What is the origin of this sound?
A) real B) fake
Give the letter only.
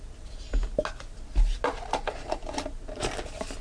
A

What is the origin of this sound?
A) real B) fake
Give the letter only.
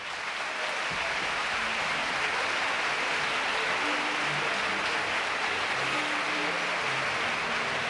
A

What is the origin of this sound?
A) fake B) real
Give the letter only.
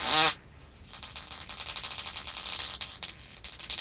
B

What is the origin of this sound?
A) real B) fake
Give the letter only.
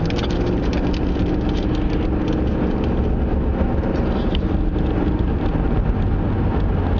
A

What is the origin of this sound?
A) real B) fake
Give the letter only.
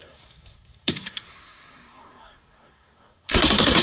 B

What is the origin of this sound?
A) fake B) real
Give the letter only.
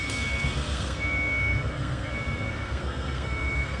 A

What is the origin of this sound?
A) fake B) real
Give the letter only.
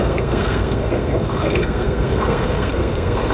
A